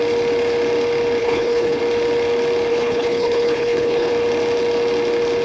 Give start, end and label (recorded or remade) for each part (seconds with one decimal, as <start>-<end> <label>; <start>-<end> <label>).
0.0-1.2 recorded; 1.2-1.8 remade; 1.8-2.7 recorded; 2.7-4.1 remade; 4.1-5.4 recorded